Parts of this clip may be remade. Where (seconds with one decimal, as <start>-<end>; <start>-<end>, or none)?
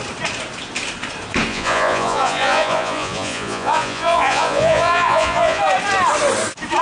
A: 1.5-5.6